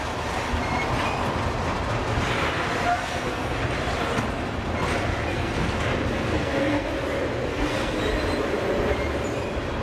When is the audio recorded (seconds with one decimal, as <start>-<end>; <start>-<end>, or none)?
0.0-2.9; 3.6-5.3; 5.8-6.3; 6.9-7.5; 8.0-9.8